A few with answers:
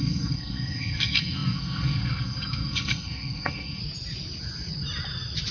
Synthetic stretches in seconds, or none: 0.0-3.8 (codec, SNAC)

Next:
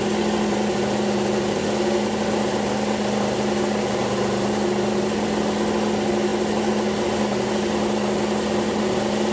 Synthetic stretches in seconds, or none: none

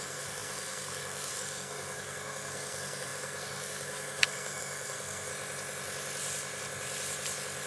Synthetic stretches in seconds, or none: 0.0-5.3 (codec, SNAC)

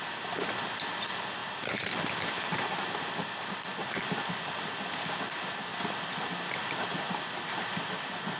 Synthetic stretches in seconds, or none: none